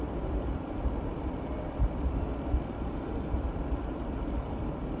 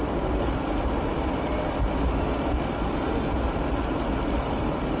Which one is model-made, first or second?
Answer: first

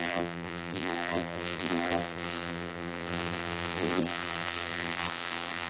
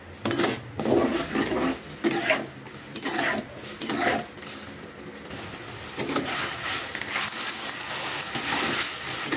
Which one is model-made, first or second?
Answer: first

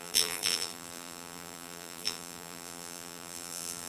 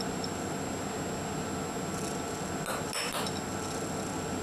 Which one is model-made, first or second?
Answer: first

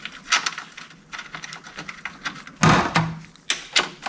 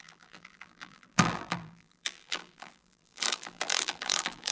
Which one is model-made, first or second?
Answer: second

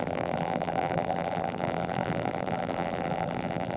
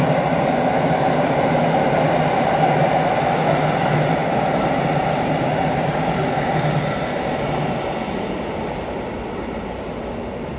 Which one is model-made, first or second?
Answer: first